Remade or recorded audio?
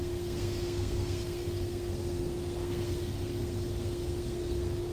remade